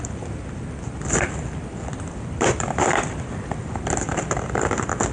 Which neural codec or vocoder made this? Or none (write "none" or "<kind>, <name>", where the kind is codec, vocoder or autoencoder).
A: vocoder, BigVGAN v2